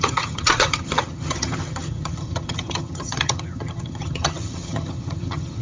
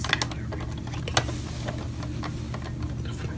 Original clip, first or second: second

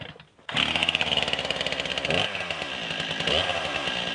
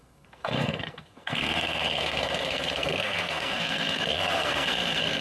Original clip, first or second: first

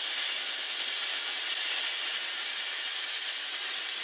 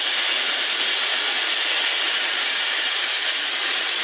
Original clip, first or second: first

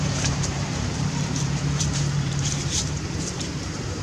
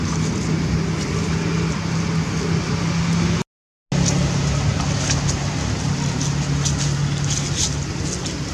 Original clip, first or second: second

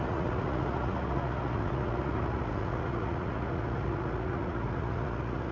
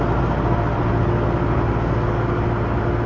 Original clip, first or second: second